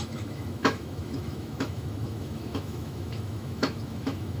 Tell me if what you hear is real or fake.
fake